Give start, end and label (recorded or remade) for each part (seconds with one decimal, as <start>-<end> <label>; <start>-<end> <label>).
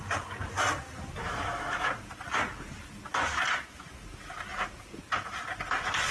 0.0-1.2 recorded; 1.2-1.9 remade; 1.9-6.1 recorded